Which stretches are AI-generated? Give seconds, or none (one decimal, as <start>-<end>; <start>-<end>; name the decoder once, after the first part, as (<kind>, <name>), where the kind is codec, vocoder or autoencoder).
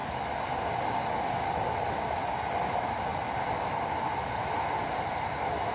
none